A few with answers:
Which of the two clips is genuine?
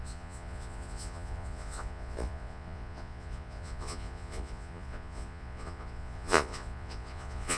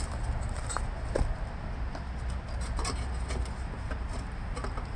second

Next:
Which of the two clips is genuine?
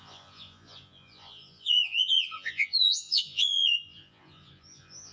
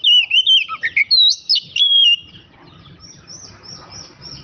second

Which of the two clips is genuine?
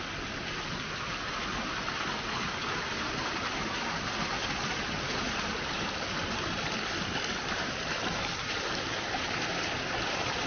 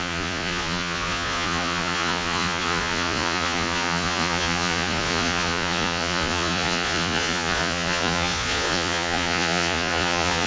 first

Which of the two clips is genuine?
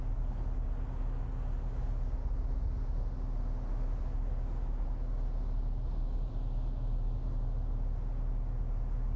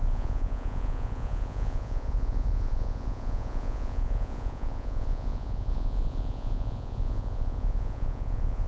first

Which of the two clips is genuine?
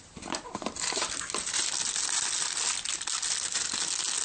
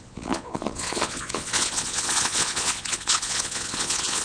first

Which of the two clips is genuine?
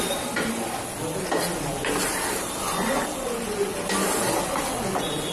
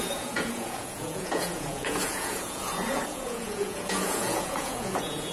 first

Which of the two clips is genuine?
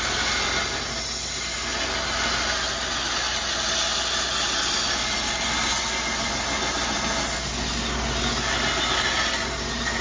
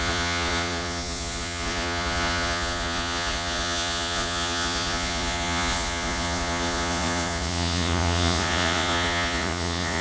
first